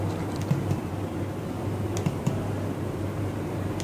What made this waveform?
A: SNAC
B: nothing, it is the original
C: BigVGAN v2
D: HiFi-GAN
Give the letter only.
C